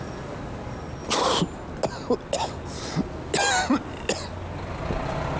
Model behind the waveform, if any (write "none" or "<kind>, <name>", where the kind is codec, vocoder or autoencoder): none